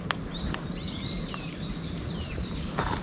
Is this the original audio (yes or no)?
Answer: no